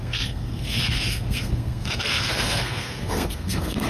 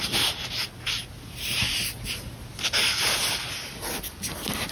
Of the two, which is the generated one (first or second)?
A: first